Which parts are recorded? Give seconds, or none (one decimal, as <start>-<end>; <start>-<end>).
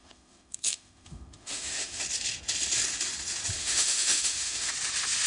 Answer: 2.0-3.6; 4.7-5.3